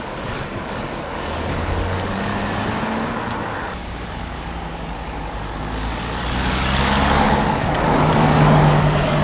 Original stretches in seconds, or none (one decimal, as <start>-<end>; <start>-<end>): 2.3-3.5